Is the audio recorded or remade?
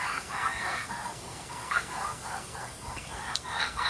remade